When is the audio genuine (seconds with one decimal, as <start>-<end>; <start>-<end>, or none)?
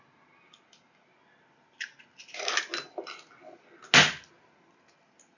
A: 0.0-5.4